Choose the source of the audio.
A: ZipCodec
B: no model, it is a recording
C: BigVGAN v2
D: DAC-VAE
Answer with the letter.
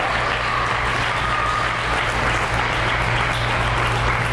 B